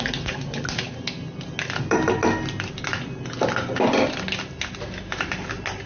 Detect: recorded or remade recorded